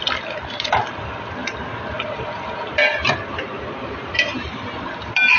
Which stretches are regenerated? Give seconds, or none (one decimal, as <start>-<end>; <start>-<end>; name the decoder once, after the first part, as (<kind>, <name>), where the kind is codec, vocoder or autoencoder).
none